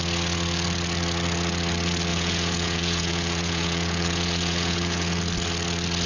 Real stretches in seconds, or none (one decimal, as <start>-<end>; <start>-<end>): 0.0-2.1; 5.2-6.1